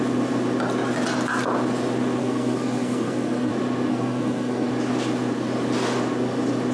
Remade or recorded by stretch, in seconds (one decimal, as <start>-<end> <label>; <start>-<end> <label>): 0.0-2.2 recorded; 2.2-3.5 remade; 3.5-3.9 recorded; 3.9-4.7 remade; 4.7-6.7 recorded